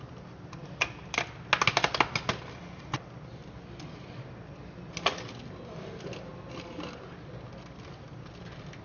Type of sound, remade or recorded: recorded